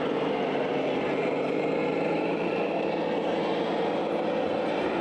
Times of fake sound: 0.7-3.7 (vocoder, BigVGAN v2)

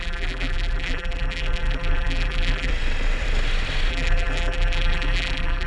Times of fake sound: 0.0-2.7 (vocoder, BigVGAN v2); 3.9-5.7

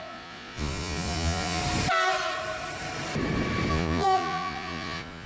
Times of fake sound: 0.0-1.6 (vocoder, Vocos); 3.7-5.3

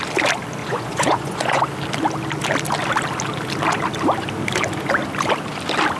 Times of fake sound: 0.6-1.6 (vocoder, Vocos)

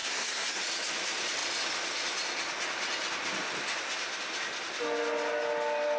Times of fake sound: 0.0-0.6 (codec, SNAC)

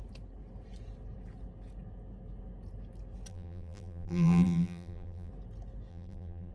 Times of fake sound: 3.3-5.3 (vocoder, BigVGAN v2); 5.9-6.5